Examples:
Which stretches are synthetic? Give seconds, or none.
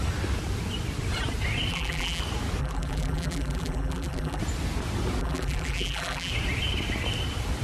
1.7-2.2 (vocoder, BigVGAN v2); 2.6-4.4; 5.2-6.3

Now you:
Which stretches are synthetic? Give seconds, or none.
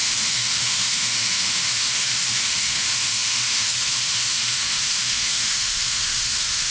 0.0-6.7 (autoencoder, DAC-VAE)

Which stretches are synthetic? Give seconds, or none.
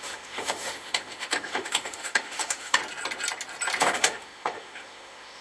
0.0-2.8 (autoencoder, DAC-VAE); 3.8-5.4